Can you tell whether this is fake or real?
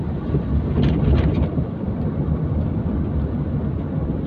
real